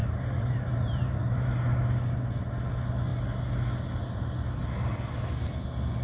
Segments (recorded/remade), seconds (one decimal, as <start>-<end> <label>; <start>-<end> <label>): 0.0-1.5 remade; 1.5-6.0 recorded